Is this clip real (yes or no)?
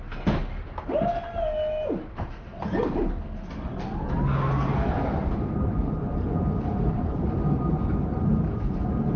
yes